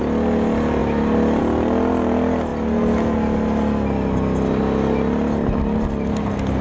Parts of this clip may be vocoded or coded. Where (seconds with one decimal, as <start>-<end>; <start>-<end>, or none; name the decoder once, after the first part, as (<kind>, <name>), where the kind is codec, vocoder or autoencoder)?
none

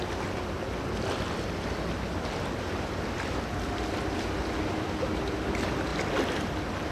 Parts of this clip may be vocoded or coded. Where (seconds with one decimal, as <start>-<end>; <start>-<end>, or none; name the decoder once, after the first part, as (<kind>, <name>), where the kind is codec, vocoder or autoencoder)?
none

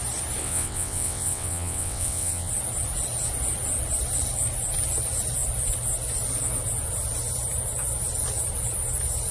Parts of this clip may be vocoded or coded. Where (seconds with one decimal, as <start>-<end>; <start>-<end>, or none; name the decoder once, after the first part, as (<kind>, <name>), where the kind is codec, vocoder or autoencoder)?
0.4-2.5 (vocoder, WaveNeXt)